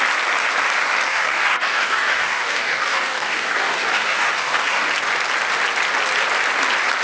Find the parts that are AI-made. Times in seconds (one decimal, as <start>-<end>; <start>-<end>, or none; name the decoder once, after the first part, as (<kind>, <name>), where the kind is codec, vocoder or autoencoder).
1.1-4.9 (codec, DAC)